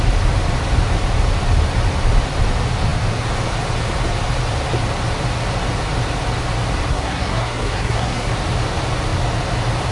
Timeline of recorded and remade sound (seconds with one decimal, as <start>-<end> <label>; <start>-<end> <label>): 0.0-6.9 recorded; 6.9-8.3 remade; 8.3-9.9 recorded